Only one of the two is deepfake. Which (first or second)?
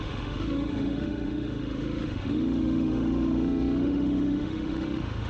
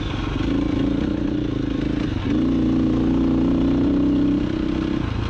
first